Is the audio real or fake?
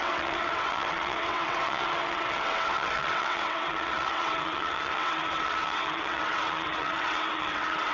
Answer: fake